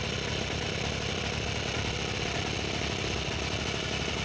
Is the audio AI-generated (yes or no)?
no